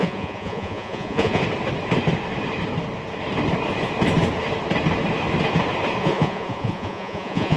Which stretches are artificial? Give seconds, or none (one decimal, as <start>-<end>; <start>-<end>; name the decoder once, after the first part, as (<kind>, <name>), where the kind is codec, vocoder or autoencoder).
0.0-1.4 (vocoder, Vocos); 6.0-7.6